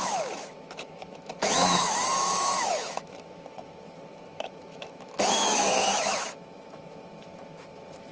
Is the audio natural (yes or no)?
no